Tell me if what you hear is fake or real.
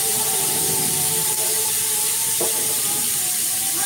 fake